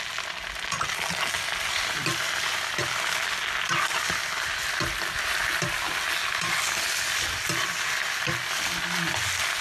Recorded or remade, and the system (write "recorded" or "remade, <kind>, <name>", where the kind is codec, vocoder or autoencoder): recorded